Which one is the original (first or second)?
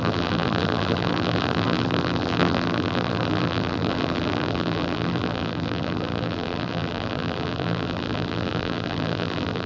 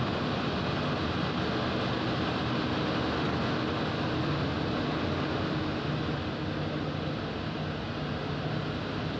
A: second